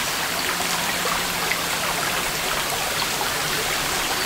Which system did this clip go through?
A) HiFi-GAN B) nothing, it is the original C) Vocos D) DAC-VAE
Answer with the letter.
B